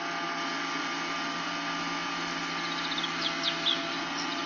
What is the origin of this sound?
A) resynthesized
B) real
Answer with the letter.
B